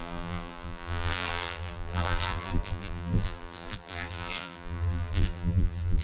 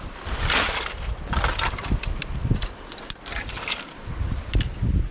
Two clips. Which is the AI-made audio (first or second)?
first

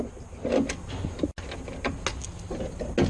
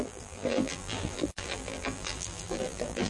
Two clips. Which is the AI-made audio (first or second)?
second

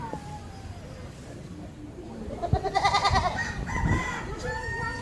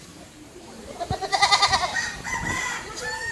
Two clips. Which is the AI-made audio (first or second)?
second